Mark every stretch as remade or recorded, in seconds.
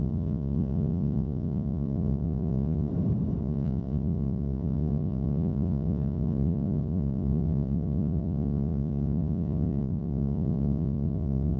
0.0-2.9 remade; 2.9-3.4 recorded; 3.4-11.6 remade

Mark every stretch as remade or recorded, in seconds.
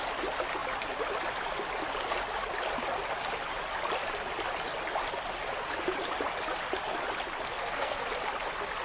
0.0-7.5 recorded; 7.5-8.0 remade; 8.0-8.8 recorded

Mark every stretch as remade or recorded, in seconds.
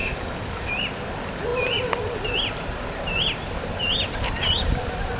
0.0-0.7 remade; 0.7-5.2 recorded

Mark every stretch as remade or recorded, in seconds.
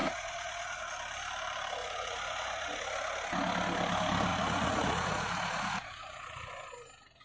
0.0-0.8 remade; 0.8-1.8 recorded; 1.8-2.8 remade; 2.8-4.3 recorded; 4.3-6.5 remade; 6.5-7.2 recorded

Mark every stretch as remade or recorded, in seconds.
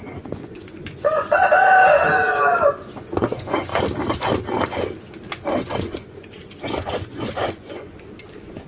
0.0-3.7 remade; 3.7-5.4 recorded; 5.4-8.7 remade